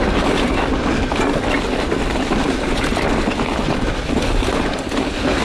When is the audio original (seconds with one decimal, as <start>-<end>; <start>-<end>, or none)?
0.0-5.4